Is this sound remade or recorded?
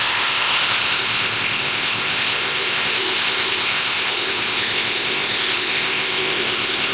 remade